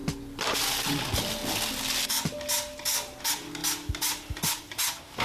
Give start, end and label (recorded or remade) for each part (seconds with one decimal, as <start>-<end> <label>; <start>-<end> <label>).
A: 0.0-5.2 recorded